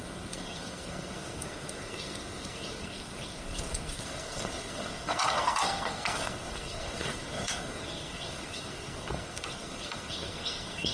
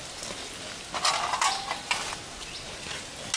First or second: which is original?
second